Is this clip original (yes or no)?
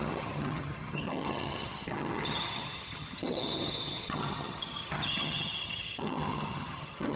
no